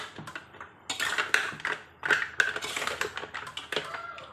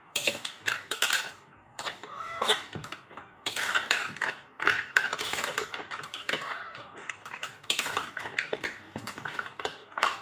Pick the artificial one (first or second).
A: second